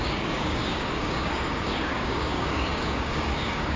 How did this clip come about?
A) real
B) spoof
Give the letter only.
B